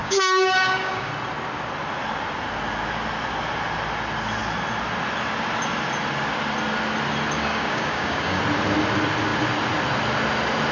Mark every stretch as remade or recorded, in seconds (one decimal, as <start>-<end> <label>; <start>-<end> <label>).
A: 0.0-1.1 remade; 1.1-7.5 recorded; 7.5-8.4 remade; 8.4-10.7 recorded